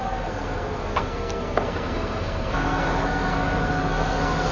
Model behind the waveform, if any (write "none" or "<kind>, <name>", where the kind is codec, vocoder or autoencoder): codec, SNAC